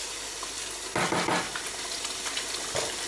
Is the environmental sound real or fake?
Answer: real